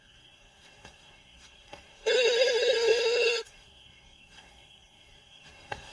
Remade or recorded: remade